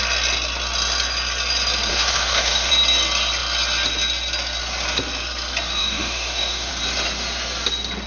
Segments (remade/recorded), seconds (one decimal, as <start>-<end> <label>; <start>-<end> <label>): 0.0-1.9 recorded; 1.9-2.7 remade; 2.7-5.8 recorded; 5.8-6.7 remade; 6.7-8.1 recorded